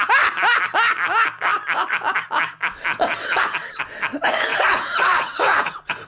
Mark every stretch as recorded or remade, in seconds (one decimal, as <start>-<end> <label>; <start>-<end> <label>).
0.0-4.5 recorded; 4.5-6.1 remade